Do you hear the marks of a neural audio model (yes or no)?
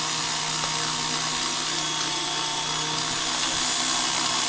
no